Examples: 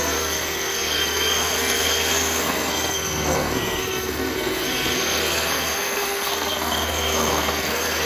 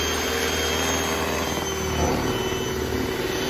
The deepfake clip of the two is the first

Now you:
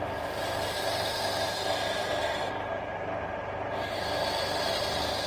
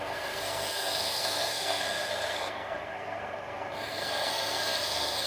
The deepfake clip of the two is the second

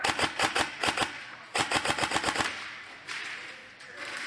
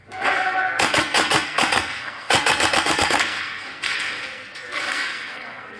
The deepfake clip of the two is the second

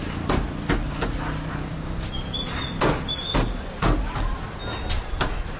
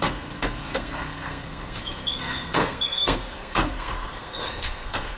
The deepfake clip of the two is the second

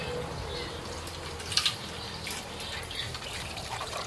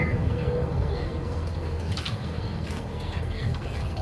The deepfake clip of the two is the second